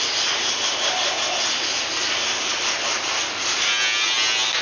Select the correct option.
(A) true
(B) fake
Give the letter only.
A